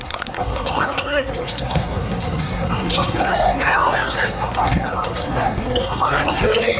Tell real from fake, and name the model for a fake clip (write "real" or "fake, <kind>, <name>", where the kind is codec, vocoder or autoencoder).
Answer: fake, codec, SNAC